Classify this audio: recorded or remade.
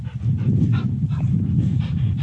recorded